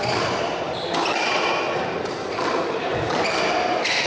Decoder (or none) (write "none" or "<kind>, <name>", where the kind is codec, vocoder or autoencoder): none